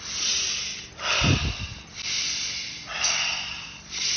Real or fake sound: real